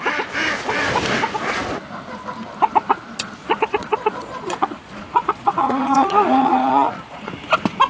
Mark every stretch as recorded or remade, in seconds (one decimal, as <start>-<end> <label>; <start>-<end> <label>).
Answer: 0.0-3.4 recorded; 3.4-7.3 remade; 7.3-7.9 recorded